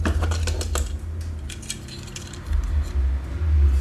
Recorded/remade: recorded